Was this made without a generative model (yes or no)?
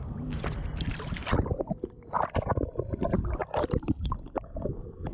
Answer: yes